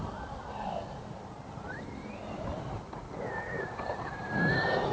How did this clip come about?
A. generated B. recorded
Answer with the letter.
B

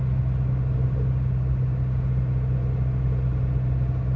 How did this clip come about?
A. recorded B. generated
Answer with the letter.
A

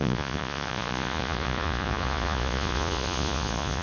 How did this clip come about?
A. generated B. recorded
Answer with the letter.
A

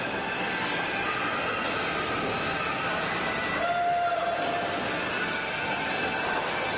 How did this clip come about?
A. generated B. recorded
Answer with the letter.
B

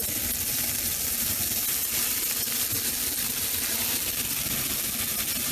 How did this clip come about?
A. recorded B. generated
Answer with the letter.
A